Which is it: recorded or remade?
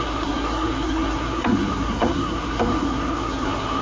remade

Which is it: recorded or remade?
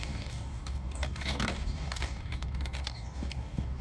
remade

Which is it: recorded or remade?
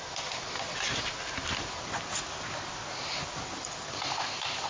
recorded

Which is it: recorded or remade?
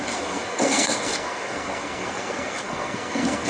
remade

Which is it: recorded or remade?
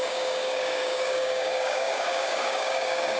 remade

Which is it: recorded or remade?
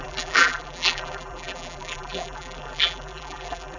remade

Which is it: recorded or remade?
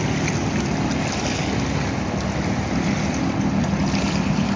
recorded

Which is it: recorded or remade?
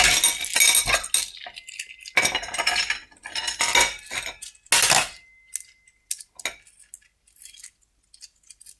recorded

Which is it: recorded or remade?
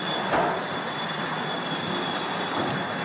recorded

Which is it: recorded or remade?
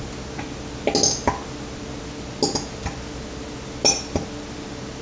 recorded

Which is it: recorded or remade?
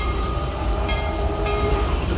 remade